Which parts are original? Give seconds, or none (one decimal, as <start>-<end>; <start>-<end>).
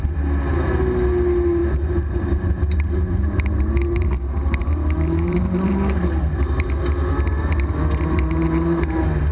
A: 0.0-1.6; 6.7-9.3